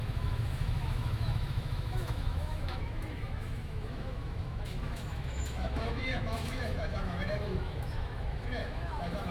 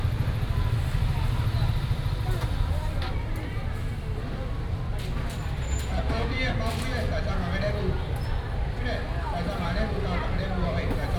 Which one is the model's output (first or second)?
first